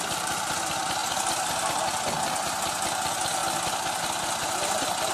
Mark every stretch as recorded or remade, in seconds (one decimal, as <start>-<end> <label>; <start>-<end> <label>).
0.0-5.1 recorded